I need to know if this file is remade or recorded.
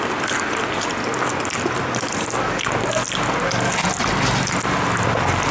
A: recorded